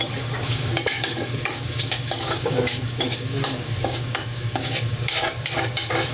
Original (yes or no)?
no